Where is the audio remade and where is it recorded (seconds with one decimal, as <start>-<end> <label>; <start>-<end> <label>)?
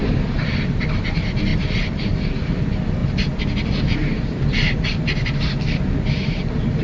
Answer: 0.0-0.8 remade; 0.8-1.5 recorded; 1.5-2.4 remade; 2.4-6.8 recorded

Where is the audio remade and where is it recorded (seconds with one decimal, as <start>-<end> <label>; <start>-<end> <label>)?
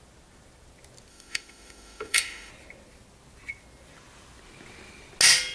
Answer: 0.0-1.1 recorded; 1.1-2.5 remade; 2.5-5.5 recorded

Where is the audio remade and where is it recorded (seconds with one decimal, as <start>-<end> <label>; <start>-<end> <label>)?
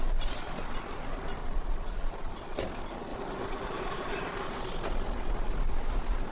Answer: 0.0-1.4 recorded; 1.4-2.6 remade; 2.6-3.1 recorded; 3.1-4.3 remade; 4.3-6.3 recorded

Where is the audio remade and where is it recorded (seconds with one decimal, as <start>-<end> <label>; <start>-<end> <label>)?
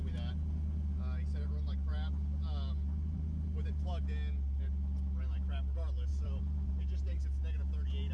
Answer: 0.0-1.9 recorded; 1.9-2.7 remade; 2.7-6.1 recorded; 6.1-6.7 remade; 6.7-8.1 recorded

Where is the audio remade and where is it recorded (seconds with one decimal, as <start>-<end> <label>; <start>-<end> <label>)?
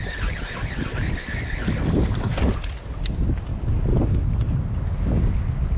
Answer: 0.0-5.8 recorded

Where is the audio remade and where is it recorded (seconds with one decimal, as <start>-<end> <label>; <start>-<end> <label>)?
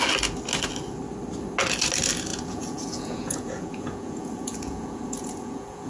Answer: 0.0-2.3 recorded; 2.3-5.9 remade